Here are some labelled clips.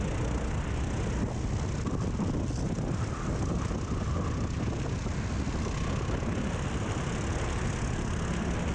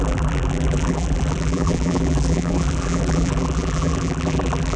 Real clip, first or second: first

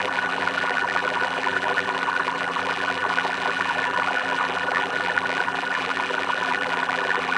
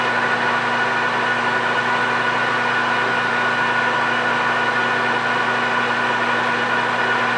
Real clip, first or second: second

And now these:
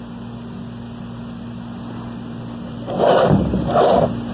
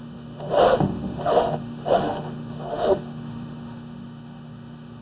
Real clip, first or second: first